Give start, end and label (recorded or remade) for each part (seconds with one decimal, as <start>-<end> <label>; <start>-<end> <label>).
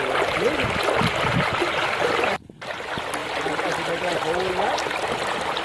0.0-5.6 recorded